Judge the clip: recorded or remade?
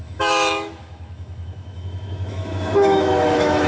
remade